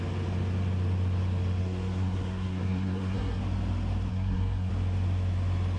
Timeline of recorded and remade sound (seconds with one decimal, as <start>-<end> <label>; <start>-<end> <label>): 0.0-1.6 recorded; 1.6-3.4 remade; 3.4-4.1 recorded; 4.1-4.7 remade; 4.7-5.8 recorded